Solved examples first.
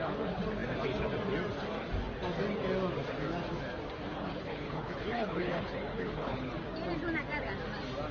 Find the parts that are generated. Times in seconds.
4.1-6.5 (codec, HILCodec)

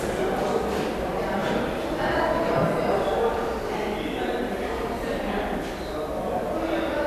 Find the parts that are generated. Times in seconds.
none